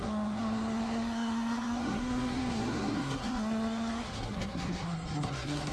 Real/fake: fake